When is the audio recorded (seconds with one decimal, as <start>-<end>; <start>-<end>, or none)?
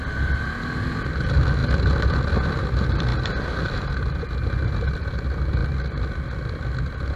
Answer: 0.0-7.2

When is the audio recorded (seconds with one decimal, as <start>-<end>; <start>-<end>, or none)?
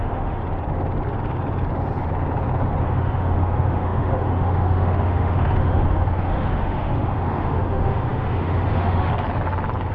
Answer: 0.4-2.8; 9.1-9.9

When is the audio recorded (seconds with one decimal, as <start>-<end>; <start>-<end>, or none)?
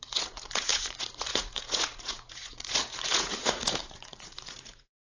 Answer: none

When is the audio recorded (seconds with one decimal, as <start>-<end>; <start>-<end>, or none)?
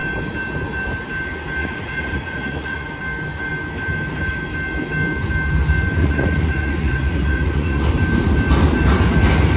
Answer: 0.0-1.6; 2.9-6.0; 7.9-9.6